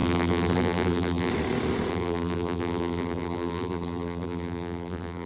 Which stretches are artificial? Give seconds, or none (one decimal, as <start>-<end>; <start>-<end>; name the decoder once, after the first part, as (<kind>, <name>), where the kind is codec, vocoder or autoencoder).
0.0-1.3 (vocoder, BigVGAN v2); 1.9-5.3